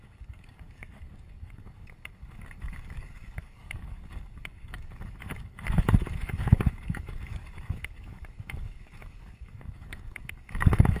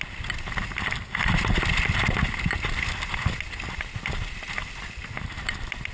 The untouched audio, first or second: second